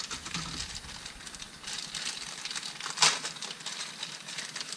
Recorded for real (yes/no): yes